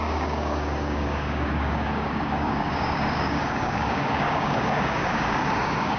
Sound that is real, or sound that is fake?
fake